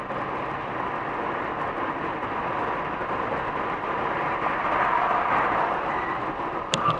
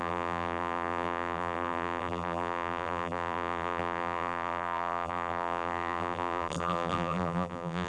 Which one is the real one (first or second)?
first